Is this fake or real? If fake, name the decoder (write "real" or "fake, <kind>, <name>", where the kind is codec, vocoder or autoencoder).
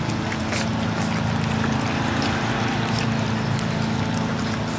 real